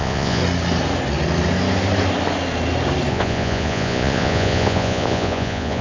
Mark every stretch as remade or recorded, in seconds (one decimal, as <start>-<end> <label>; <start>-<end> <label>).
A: 0.0-0.4 remade; 0.4-3.1 recorded; 3.1-5.8 remade